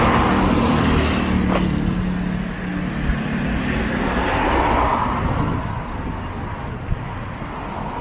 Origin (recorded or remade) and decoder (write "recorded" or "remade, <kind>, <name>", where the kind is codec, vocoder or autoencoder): recorded